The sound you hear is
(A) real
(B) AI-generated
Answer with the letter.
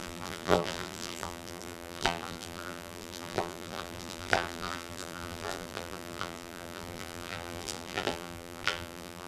B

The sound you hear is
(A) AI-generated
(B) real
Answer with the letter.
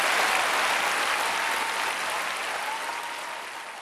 B